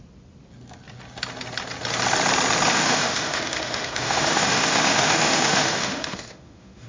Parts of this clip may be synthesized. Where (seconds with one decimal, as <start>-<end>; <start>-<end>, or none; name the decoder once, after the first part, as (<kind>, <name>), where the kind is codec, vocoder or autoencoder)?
2.7-6.9 (autoencoder, DAC-VAE)